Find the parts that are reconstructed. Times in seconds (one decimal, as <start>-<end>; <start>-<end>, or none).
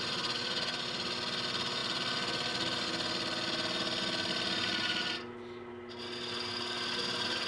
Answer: none